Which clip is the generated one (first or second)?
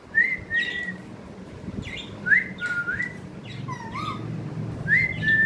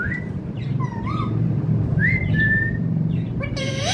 second